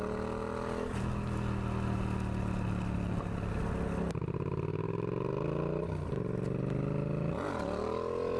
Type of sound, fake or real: real